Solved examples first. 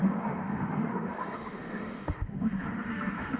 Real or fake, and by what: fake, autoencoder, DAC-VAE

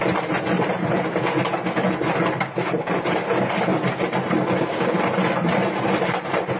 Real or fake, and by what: real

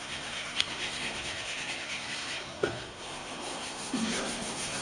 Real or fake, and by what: fake, codec, SNAC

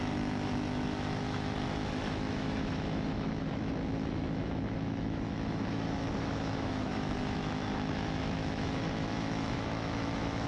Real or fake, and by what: fake, autoencoder, DAC-VAE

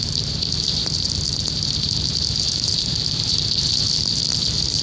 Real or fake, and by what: fake, vocoder, BigVGAN v2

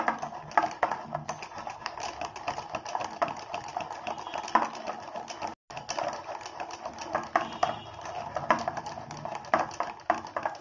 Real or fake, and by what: real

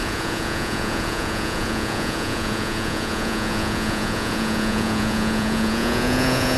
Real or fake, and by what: fake, vocoder, Vocos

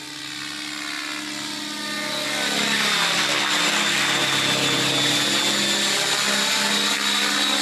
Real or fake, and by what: real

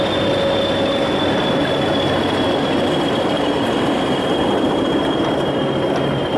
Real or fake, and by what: real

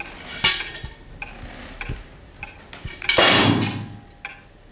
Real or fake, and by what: real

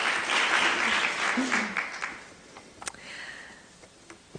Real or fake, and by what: real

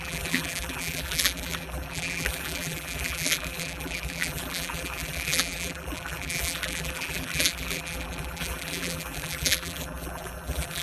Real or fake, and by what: fake, vocoder, BigVGAN v2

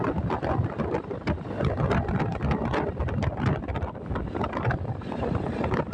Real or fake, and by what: real